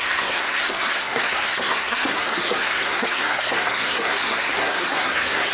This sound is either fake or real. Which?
fake